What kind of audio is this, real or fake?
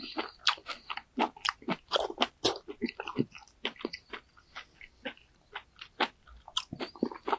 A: real